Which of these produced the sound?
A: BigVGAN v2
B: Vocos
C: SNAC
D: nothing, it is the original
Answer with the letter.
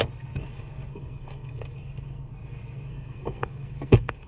C